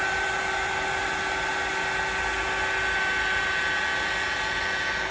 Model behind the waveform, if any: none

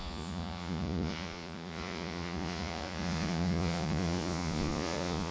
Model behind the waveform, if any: vocoder, Vocos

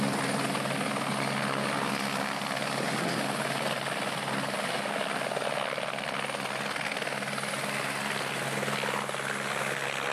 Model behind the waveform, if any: none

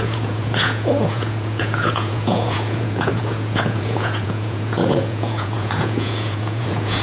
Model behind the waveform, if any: vocoder, Vocos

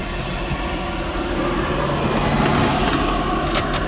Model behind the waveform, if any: none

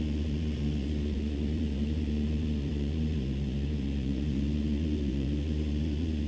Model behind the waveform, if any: vocoder, Vocos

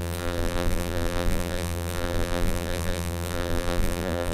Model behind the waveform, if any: vocoder, BigVGAN v2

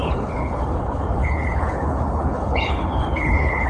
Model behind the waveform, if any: codec, HILCodec